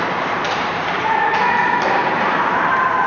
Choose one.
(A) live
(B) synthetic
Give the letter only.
B